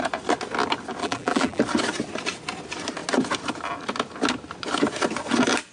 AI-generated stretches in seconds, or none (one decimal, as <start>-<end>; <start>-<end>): 1.0-1.6